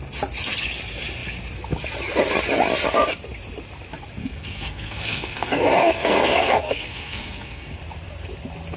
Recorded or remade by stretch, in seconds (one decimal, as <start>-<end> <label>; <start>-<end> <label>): 0.0-4.2 recorded; 4.2-7.8 remade; 7.8-8.8 recorded